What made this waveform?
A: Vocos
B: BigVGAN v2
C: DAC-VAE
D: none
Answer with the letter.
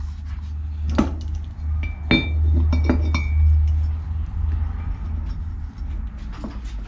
D